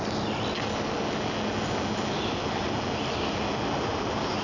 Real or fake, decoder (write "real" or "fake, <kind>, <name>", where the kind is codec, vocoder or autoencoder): real